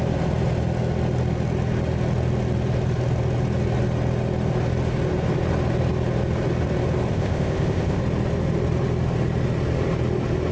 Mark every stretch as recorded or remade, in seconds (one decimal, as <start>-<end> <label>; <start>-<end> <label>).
0.0-7.1 recorded; 7.1-8.0 remade; 8.0-10.5 recorded